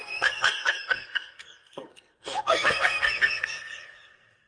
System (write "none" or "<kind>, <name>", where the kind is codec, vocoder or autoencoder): codec, SNAC